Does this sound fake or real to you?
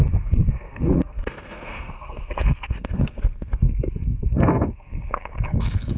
fake